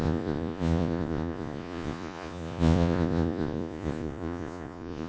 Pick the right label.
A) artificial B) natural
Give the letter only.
A